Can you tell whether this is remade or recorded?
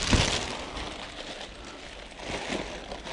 recorded